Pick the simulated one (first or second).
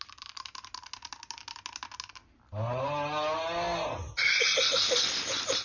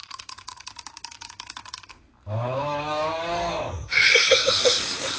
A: second